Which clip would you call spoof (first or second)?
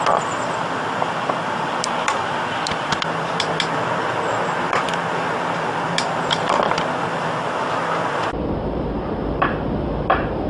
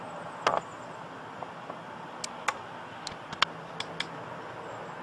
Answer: first